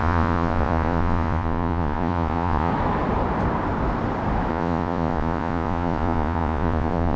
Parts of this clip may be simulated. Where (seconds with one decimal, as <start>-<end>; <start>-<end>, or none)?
0.0-2.7; 4.5-7.2